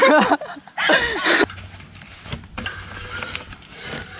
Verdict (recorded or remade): recorded